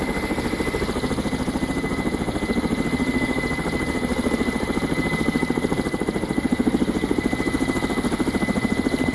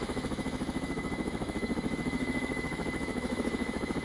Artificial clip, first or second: second